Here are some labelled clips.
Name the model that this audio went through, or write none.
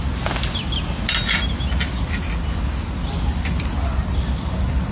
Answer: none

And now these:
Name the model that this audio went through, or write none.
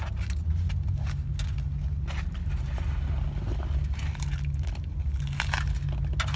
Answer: none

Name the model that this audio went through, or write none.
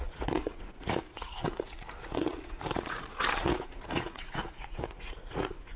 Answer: vocoder, Vocos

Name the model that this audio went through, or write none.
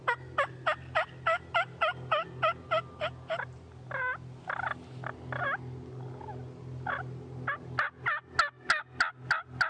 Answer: none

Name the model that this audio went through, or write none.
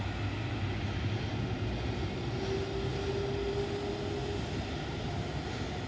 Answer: none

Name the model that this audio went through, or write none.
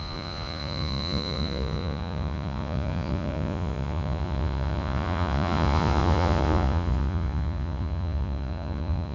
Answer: vocoder, Vocos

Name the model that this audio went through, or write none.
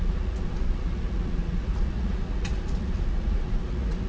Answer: vocoder, Vocos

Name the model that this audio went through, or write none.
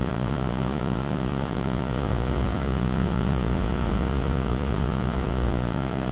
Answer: vocoder, Vocos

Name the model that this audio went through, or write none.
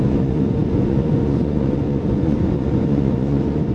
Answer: vocoder, Vocos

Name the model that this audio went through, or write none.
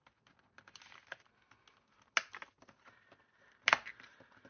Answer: none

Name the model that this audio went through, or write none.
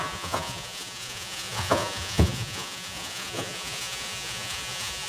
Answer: vocoder, Vocos